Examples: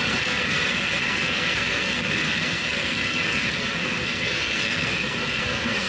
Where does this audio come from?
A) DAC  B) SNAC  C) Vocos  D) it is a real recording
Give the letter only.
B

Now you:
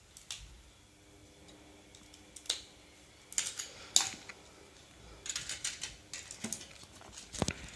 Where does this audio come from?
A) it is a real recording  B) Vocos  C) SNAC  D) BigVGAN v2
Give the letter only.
A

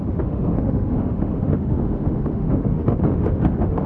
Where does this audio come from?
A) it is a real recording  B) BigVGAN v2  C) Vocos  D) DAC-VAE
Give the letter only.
D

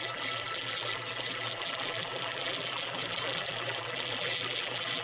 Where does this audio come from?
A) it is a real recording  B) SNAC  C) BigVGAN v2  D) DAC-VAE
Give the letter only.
C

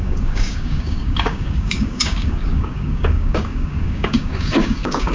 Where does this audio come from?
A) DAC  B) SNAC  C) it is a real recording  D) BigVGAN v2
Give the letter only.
A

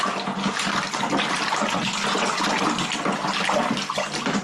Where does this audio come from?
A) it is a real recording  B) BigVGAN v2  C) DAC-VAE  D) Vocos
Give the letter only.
A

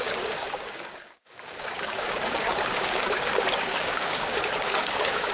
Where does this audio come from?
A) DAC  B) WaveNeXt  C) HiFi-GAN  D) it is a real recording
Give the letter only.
A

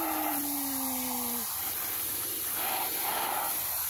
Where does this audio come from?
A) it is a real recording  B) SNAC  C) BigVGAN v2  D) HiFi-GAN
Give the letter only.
C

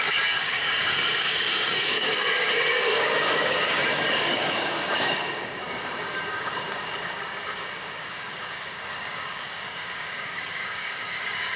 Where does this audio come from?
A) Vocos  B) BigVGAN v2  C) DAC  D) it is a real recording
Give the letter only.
C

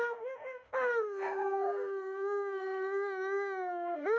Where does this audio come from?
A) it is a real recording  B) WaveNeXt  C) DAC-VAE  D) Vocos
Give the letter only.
C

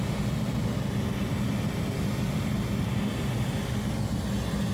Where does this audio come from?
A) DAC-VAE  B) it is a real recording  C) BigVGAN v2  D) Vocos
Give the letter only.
B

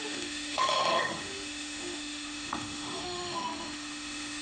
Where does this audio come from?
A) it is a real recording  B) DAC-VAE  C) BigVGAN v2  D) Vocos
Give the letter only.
B